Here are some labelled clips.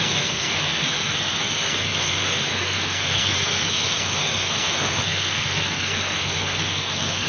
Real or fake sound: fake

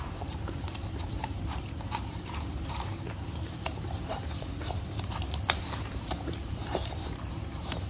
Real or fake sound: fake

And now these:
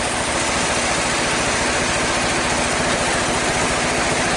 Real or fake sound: real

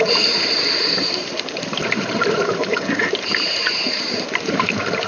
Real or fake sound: fake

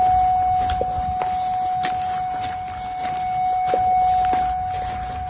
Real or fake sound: real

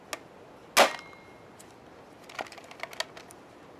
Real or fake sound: real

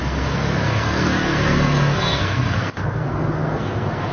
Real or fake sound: fake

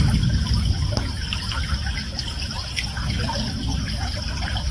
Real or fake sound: real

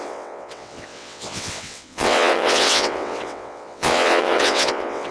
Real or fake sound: fake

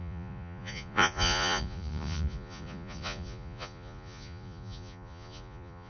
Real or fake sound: fake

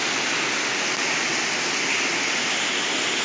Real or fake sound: real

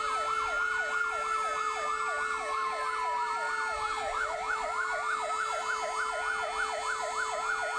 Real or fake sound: real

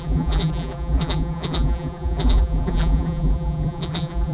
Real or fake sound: fake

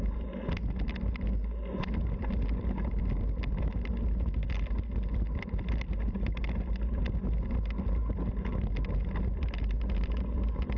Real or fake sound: real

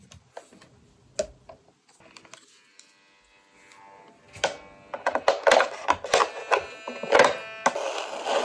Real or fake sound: real